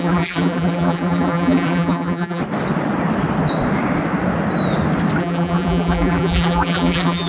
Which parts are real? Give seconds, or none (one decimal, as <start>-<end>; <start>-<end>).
2.4-5.2